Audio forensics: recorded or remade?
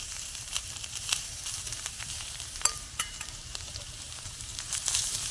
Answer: remade